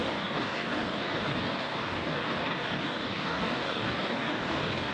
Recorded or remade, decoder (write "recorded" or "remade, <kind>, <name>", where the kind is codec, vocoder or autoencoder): remade, codec, DAC